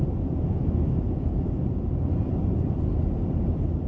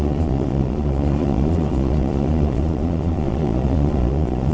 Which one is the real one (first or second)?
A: first